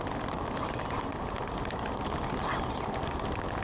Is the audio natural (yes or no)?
yes